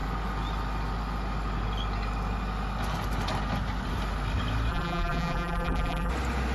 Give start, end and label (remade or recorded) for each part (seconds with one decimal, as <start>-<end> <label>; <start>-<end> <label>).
0.0-4.7 recorded; 4.7-6.1 remade; 6.1-6.5 recorded